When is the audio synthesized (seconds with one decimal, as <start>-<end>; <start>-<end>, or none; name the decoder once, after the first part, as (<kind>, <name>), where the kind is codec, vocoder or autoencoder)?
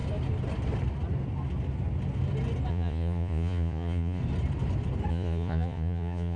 2.7-4.2 (vocoder, Vocos); 5.1-6.4